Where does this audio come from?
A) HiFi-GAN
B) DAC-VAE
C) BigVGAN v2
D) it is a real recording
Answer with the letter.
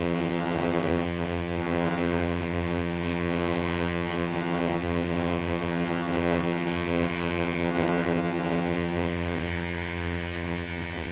A